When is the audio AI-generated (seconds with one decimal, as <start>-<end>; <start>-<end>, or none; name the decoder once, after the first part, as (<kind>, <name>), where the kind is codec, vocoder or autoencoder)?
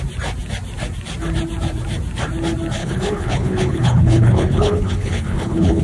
2.8-5.8 (codec, HILCodec)